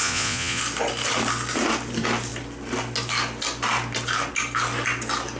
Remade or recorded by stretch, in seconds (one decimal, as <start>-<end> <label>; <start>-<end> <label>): 0.0-0.6 remade; 0.6-5.4 recorded